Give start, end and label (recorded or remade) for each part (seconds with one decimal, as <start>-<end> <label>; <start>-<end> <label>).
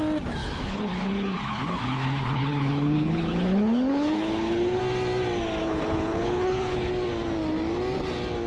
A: 0.0-0.4 recorded; 0.4-4.8 remade; 4.8-5.6 recorded; 5.6-6.9 remade; 6.9-8.5 recorded